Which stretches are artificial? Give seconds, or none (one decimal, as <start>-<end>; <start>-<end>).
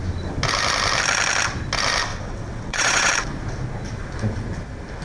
2.1-3.1